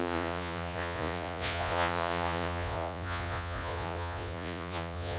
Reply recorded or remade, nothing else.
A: remade